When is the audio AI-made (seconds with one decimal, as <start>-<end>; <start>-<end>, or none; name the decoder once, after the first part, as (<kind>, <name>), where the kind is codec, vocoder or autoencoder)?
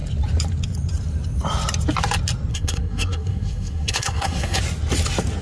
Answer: 2.5-4.6 (codec, SNAC)